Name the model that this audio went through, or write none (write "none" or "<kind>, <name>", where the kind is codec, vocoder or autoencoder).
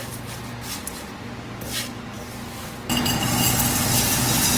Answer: none